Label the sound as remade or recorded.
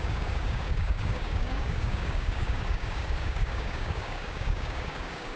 remade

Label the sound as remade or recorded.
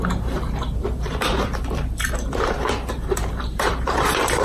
remade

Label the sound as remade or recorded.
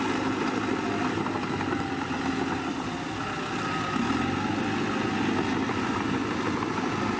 recorded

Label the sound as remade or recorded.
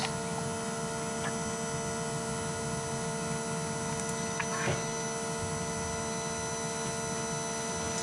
recorded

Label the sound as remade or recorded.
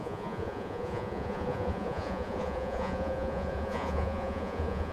remade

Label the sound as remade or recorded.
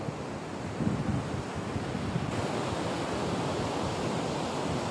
recorded